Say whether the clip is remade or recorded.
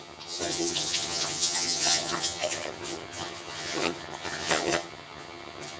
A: remade